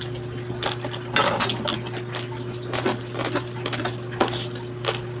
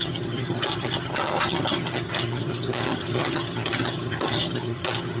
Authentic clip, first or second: first